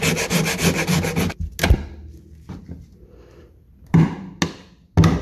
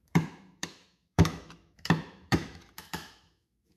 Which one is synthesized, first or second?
second